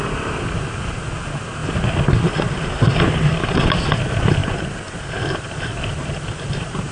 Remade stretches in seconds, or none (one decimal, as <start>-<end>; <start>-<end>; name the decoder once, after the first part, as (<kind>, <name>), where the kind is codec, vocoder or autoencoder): none